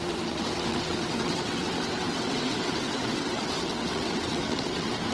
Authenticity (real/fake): fake